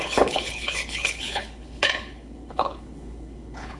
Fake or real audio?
fake